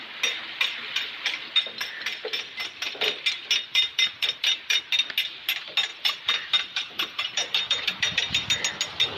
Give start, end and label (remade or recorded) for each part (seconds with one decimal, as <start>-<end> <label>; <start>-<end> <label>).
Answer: 0.0-3.7 recorded; 3.7-4.8 remade; 4.8-5.9 recorded; 5.9-8.6 remade; 8.6-9.2 recorded